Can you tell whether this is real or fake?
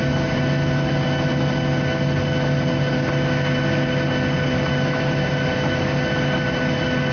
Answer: real